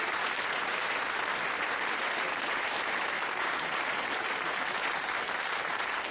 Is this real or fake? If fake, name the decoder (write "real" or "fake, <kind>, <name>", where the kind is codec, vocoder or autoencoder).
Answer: fake, vocoder, BigVGAN v2